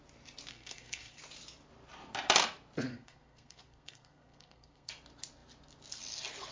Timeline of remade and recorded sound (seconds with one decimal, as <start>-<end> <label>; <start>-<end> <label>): 0.0-0.5 recorded; 0.5-1.2 remade; 1.2-2.9 recorded; 2.9-4.9 remade; 4.9-6.5 recorded